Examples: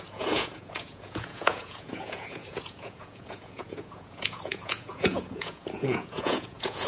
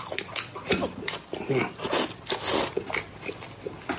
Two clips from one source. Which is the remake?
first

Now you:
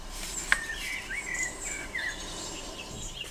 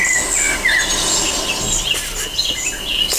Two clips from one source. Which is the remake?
first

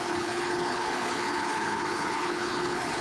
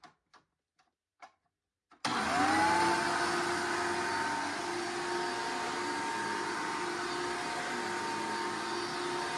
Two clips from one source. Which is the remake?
first